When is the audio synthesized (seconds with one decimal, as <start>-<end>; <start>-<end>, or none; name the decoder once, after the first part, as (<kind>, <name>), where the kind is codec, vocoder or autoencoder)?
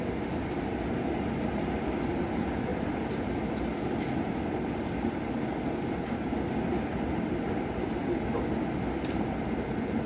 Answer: none